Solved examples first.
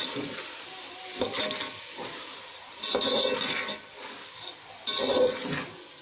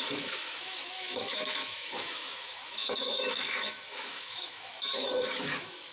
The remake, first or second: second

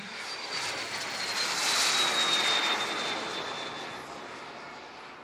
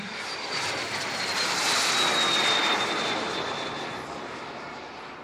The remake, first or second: second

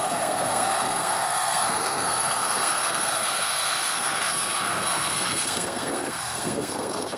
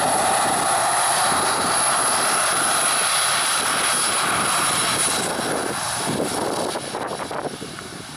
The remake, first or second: first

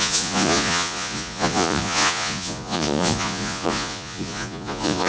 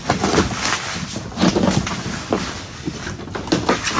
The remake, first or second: first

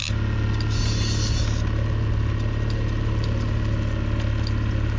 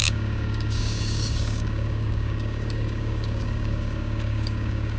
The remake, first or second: second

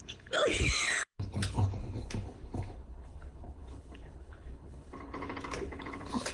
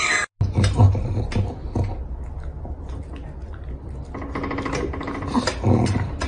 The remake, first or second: first